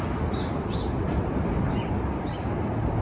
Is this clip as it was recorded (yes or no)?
yes